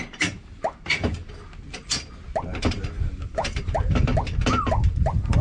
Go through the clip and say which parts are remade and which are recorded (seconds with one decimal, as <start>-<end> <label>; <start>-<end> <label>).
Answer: 0.0-1.2 remade; 1.2-2.7 recorded; 2.7-4.1 remade; 4.1-4.7 recorded; 4.7-5.4 remade